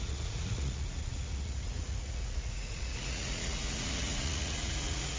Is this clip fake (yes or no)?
yes